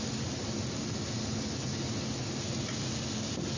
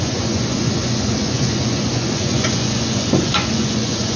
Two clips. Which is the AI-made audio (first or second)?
second